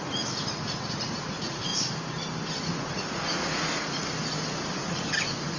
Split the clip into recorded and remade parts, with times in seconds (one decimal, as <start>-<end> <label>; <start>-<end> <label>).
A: 0.0-1.7 remade; 1.7-2.6 recorded; 2.6-4.0 remade; 4.0-4.8 recorded; 4.8-5.6 remade